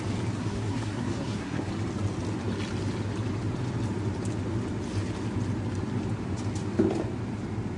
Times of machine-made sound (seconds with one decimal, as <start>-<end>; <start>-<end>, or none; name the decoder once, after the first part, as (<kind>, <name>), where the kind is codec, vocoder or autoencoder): 0.4-1.7 (codec, SNAC)